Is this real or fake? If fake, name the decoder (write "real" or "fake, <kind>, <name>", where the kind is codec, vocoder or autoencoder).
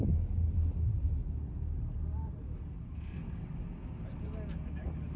real